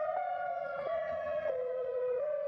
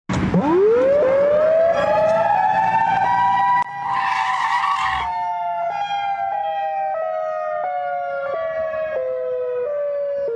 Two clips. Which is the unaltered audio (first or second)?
second